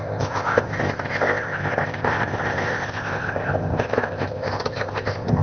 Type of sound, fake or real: fake